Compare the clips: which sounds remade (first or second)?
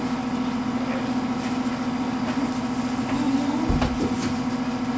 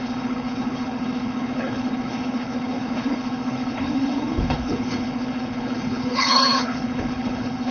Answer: second